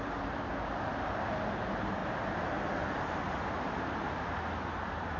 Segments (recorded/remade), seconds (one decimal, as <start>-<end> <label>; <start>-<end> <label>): 0.0-0.9 remade; 0.9-1.6 recorded; 1.6-2.0 remade; 2.0-4.7 recorded; 4.7-5.2 remade